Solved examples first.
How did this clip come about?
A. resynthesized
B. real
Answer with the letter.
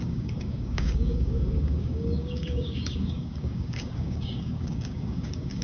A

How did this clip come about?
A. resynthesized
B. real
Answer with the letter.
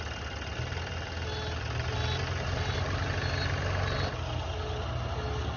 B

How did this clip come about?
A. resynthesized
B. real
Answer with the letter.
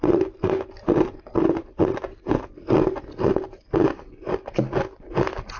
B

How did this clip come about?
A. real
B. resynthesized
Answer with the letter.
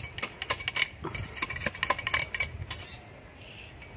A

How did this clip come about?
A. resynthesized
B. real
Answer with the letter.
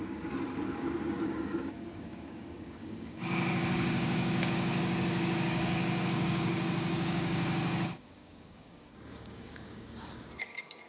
A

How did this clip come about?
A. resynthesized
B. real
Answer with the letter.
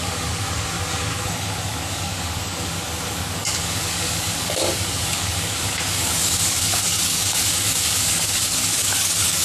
A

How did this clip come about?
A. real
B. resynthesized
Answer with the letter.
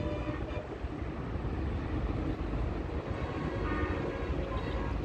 A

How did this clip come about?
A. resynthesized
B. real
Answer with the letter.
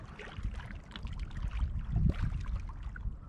B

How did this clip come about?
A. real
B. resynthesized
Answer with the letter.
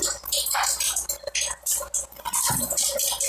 A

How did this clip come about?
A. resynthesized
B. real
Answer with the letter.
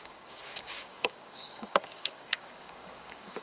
A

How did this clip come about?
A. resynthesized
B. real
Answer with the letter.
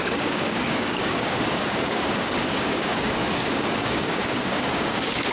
A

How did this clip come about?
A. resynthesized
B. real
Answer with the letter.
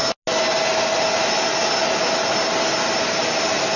B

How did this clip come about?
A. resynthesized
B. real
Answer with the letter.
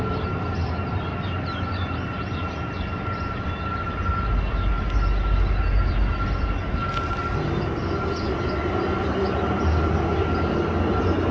B